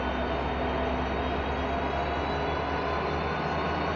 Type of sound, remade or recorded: recorded